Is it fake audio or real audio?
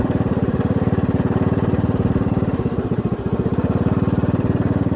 fake